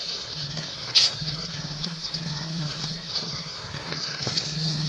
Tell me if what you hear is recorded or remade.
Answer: remade